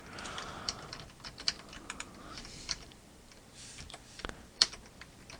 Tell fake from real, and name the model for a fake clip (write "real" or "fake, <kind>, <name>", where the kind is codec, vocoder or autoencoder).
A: fake, vocoder, BigVGAN v2